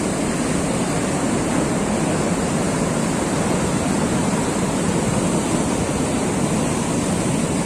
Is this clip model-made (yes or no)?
no